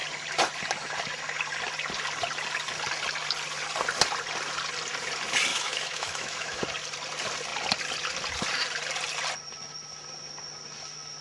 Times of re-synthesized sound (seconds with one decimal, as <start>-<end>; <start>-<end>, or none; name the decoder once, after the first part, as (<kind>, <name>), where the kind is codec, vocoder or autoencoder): 5.5-6.6 (autoencoder, DAC-VAE)

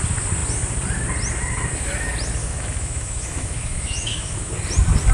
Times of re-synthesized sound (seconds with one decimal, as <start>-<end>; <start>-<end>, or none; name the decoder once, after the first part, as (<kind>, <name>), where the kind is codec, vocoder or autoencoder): 2.4-4.5 (autoencoder, DAC-VAE)